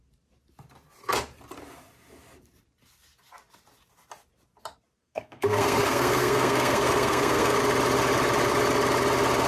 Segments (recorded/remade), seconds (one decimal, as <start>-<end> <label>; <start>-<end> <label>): 0.0-5.0 recorded; 5.0-7.6 remade; 7.6-9.5 recorded